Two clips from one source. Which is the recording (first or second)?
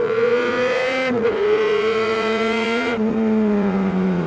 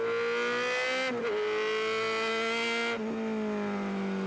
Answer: second